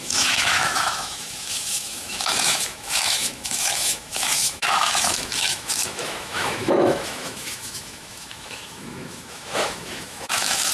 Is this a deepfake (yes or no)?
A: yes